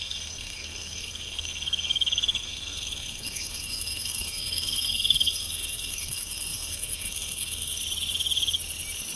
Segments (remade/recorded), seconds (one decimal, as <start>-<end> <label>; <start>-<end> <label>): 0.0-7.8 remade; 7.8-9.2 recorded

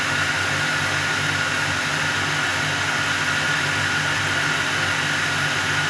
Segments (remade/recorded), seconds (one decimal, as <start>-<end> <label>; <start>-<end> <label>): 0.0-5.9 recorded